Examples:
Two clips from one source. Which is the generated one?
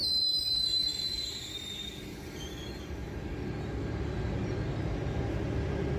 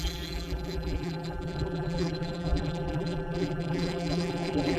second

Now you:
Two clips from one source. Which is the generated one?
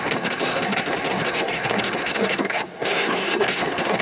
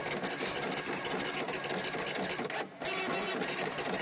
first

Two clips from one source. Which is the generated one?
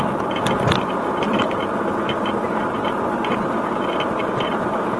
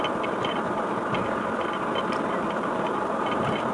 second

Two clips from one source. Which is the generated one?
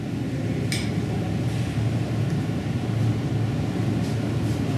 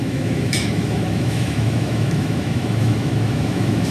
second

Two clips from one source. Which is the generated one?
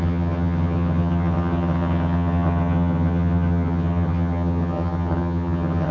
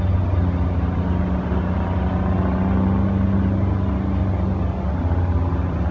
first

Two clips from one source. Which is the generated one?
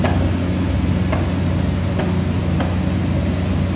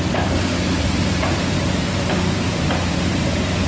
second